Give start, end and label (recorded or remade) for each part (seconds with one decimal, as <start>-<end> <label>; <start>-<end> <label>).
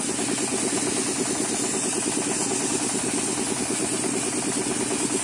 0.0-5.2 recorded